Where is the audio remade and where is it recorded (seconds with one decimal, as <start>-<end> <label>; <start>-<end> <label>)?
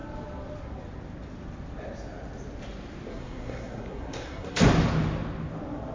0.0-3.1 recorded; 3.1-4.6 remade; 4.6-5.9 recorded